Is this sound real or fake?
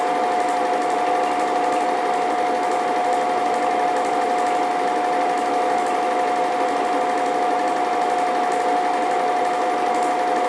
real